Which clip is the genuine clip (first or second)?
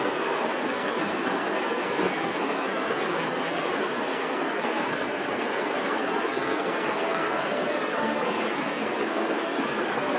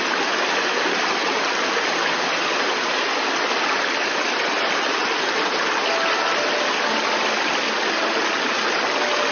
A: second